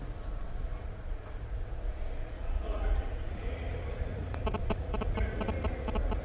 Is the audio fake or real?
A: fake